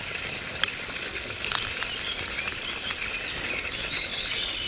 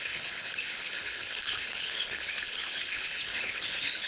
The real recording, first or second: first